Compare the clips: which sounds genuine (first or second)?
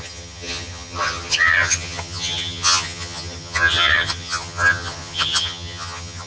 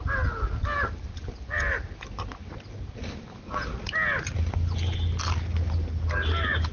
second